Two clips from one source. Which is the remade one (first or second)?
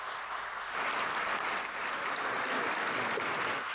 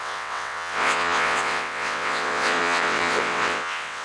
second